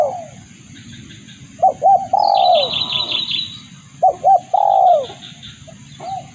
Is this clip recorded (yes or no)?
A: yes